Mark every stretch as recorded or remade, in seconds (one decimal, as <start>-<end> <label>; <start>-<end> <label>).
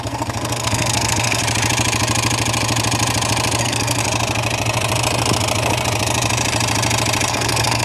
0.0-1.4 remade; 1.4-3.6 recorded; 3.6-4.0 remade; 4.0-7.3 recorded; 7.3-7.8 remade